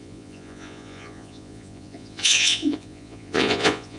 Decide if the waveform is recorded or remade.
remade